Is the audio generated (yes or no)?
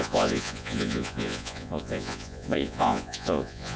yes